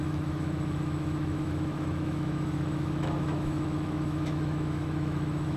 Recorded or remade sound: remade